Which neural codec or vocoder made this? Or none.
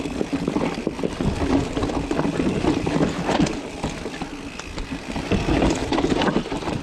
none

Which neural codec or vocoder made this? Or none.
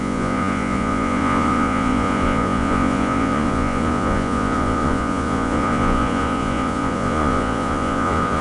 vocoder, Vocos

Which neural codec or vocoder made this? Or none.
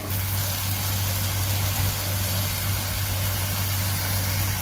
none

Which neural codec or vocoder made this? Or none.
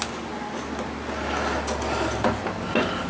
none